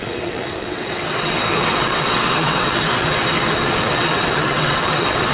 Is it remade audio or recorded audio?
remade